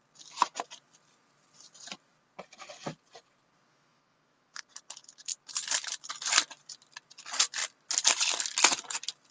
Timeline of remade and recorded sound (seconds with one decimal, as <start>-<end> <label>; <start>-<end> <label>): 0.0-3.7 recorded; 3.7-4.6 remade; 4.6-9.3 recorded